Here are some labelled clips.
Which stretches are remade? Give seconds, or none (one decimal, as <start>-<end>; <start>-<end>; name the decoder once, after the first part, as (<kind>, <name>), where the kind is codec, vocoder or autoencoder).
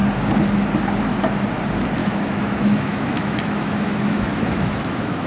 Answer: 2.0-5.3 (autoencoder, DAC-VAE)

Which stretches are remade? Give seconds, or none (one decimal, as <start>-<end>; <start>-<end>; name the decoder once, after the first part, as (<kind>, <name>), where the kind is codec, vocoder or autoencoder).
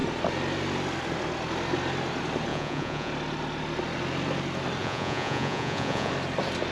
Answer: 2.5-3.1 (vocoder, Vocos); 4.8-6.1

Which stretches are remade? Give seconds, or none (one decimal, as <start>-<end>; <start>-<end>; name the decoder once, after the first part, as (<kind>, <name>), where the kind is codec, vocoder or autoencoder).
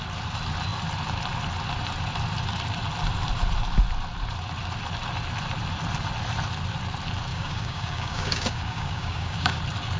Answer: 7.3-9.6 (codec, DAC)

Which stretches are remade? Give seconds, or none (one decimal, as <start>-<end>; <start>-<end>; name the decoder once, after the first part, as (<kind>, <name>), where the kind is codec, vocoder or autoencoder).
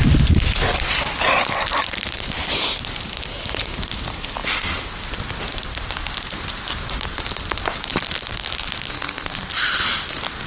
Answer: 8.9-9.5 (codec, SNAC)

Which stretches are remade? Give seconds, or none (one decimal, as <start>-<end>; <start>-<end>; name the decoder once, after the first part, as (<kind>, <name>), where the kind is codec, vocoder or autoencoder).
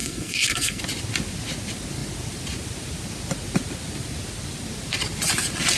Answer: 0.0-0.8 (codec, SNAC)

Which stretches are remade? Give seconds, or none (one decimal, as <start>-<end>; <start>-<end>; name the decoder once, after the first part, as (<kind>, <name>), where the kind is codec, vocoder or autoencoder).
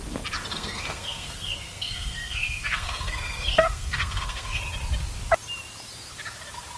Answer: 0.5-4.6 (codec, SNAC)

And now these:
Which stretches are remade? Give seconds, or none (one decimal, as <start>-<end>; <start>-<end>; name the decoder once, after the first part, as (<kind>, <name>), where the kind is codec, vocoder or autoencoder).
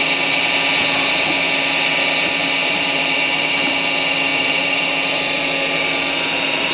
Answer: 2.6-3.5 (vocoder, BigVGAN v2); 4.3-5.4